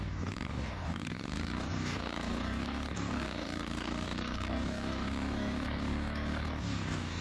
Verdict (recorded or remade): remade